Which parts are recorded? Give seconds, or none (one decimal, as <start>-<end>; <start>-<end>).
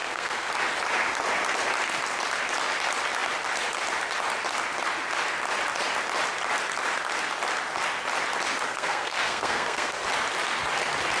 0.5-8.7; 10.0-11.2